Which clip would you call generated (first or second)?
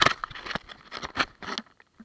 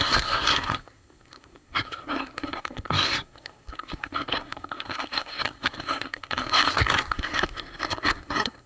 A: second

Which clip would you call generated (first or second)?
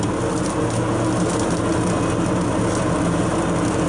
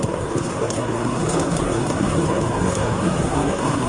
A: second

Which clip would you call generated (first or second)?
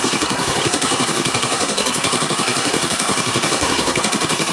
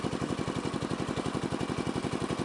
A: first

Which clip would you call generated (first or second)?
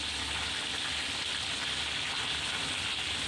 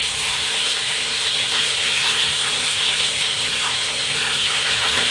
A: second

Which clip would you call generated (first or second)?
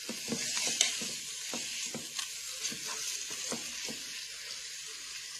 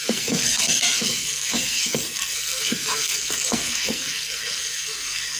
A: second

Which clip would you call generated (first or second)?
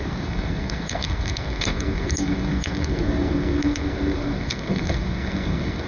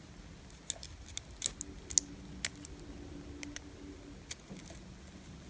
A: first